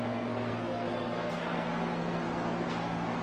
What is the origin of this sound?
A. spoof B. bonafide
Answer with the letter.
A